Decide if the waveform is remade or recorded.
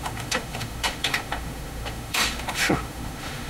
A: remade